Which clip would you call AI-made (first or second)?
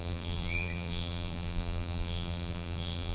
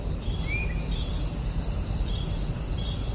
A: first